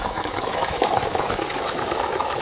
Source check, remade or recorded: remade